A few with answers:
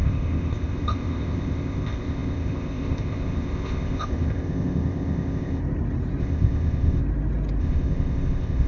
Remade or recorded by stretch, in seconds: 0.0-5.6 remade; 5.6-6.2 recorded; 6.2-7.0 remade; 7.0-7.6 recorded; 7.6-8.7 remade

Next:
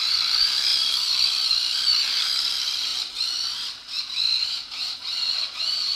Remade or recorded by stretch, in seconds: 0.0-5.9 remade

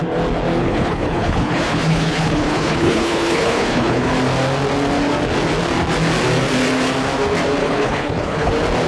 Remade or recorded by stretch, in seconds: 0.0-0.6 recorded; 0.6-4.1 remade; 4.1-7.6 recorded; 7.6-8.5 remade; 8.5-8.9 recorded

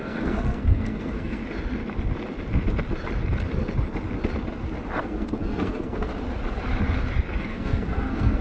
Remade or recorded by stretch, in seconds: 0.0-1.4 remade; 1.4-5.0 recorded; 5.0-6.1 remade; 6.1-7.4 recorded; 7.4-8.4 remade